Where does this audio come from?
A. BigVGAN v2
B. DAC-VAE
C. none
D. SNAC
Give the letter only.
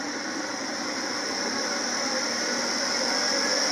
C